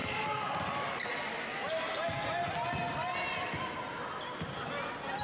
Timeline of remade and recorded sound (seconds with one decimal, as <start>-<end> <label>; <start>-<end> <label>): 0.0-5.2 recorded